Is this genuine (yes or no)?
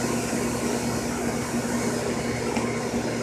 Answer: yes